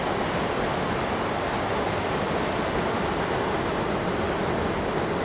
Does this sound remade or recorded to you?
recorded